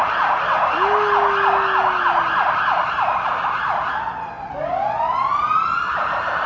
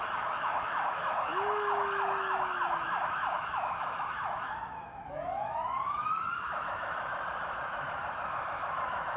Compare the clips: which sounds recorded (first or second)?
first